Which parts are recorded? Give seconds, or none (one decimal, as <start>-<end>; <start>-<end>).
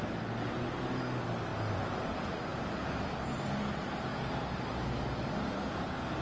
0.0-1.5; 2.1-6.2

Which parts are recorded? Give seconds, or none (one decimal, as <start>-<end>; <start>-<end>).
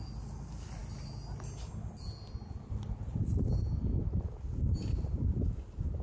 0.0-6.0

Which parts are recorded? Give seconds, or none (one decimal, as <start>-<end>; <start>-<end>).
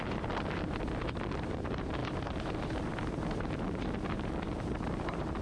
none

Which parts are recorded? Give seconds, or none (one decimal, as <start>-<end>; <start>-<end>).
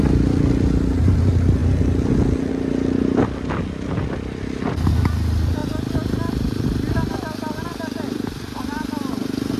0.0-9.6